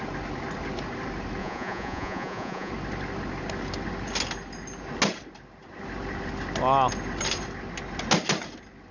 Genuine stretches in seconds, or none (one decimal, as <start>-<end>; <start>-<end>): 0.0-1.4; 2.7-8.9